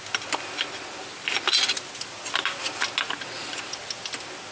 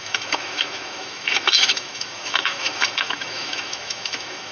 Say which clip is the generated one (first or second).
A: second